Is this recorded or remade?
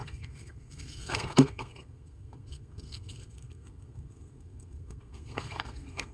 remade